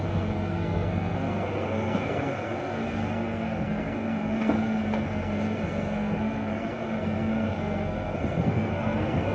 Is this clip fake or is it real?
fake